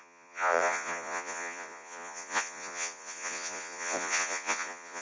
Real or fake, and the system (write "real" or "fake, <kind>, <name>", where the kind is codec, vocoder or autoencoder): fake, vocoder, Vocos